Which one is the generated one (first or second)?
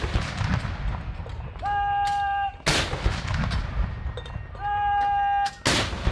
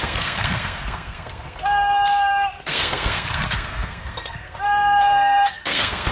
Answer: second